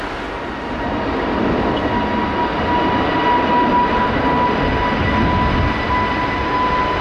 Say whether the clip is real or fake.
real